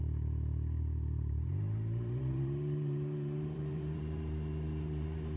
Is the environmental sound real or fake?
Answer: fake